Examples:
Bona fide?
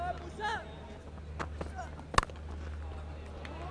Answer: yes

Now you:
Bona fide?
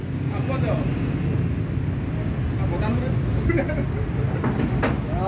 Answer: yes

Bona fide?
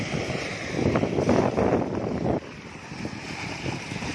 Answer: yes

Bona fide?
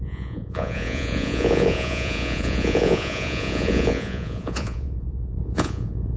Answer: no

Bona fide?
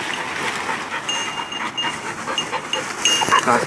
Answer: yes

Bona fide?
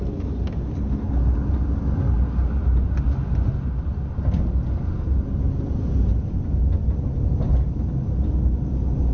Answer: yes